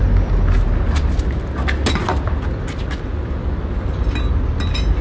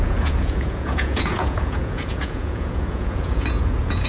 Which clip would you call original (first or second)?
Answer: first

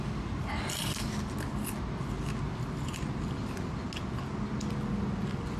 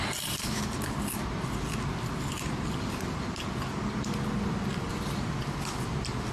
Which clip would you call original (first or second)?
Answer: first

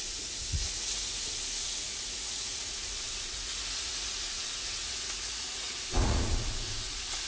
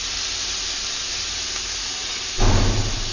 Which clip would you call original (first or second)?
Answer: second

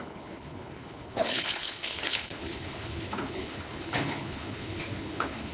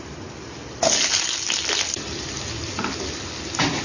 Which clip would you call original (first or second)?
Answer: second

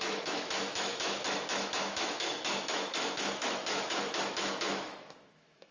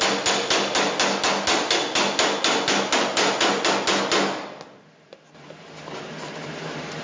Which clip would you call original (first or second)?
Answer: second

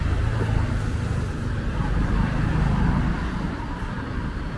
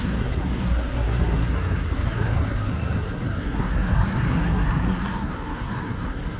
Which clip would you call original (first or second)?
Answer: first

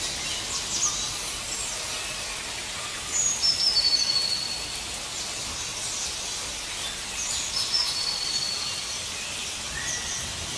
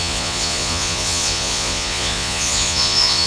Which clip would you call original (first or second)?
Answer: first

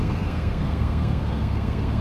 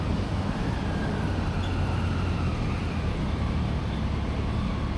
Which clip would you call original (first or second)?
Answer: second